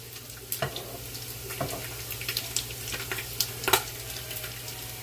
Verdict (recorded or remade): recorded